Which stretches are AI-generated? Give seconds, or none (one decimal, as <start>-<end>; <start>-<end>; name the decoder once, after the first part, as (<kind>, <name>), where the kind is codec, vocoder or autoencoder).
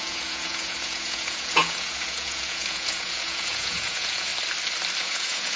0.0-4.3 (vocoder, Vocos); 5.0-5.6